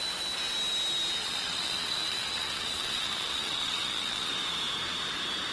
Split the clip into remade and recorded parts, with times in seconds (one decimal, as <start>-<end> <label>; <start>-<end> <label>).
0.0-1.2 recorded; 1.2-4.3 remade; 4.3-5.5 recorded

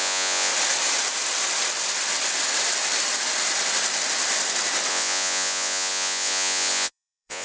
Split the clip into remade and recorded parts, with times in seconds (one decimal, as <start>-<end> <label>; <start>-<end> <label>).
0.0-0.5 remade; 0.5-4.9 recorded; 4.9-7.4 remade